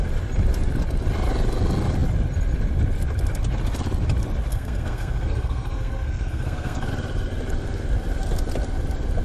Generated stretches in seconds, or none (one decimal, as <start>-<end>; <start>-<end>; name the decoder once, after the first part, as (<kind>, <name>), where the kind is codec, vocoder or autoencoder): 4.5-6.9 (codec, SNAC)